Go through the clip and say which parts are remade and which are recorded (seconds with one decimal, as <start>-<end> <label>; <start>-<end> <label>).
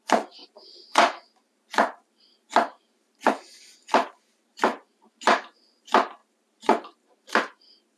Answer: 0.0-8.0 remade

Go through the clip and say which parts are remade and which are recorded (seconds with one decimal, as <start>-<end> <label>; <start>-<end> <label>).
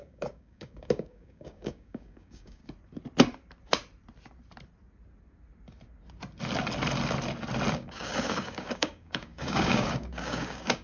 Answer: 0.0-2.6 remade; 2.6-7.7 recorded; 7.7-10.8 remade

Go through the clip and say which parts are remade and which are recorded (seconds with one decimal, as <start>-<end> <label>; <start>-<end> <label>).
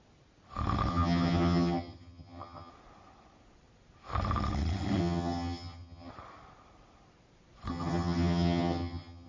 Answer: 0.0-0.9 recorded; 0.9-2.7 remade; 2.7-5.0 recorded; 5.0-6.1 remade; 6.1-7.7 recorded; 7.7-9.3 remade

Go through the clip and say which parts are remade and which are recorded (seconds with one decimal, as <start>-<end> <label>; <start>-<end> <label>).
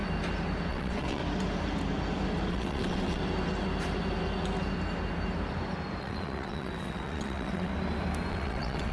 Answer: 0.0-0.7 recorded; 0.7-1.2 remade; 1.2-2.5 recorded; 2.5-3.2 remade; 3.2-6.0 recorded; 6.0-7.7 remade; 7.7-8.3 recorded; 8.3-8.9 remade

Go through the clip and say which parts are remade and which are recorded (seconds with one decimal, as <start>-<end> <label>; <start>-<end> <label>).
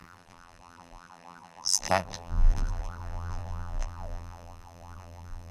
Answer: 0.0-5.5 remade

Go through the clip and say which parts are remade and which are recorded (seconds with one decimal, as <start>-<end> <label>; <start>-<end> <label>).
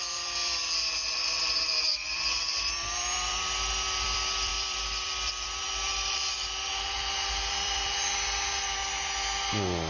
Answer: 0.0-8.8 remade; 8.8-9.9 recorded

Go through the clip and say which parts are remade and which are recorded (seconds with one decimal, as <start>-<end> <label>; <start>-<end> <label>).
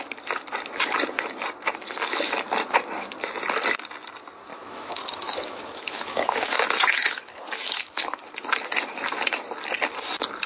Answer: 0.0-4.5 recorded; 4.5-8.3 remade; 8.3-10.5 recorded